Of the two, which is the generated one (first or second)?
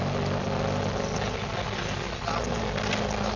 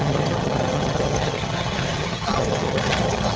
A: second